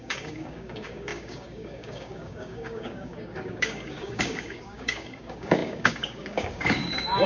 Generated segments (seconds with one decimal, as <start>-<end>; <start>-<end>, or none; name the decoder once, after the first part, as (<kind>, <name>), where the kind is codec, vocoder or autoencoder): 0.0-7.3 (codec, DAC)